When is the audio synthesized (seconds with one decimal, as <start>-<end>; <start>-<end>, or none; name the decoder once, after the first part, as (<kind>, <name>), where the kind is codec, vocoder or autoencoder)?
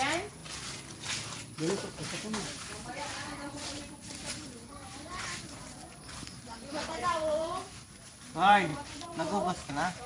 0.0-0.4 (vocoder, BigVGAN v2); 1.7-10.1